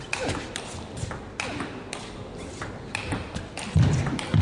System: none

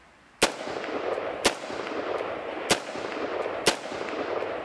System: none